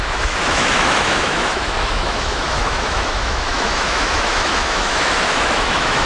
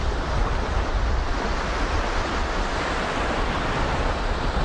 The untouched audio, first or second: second